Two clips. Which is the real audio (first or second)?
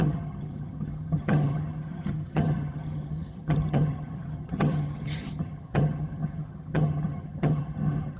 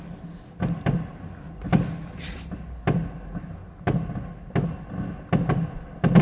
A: second